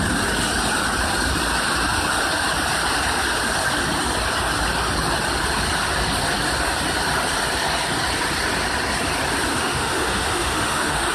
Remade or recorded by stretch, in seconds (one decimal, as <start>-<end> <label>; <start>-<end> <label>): 0.0-9.5 recorded; 9.5-11.1 remade